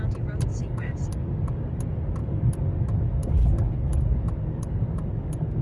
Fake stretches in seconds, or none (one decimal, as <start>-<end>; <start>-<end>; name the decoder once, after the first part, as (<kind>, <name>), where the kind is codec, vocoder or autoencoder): 0.5-1.8 (codec, DAC); 2.2-5.6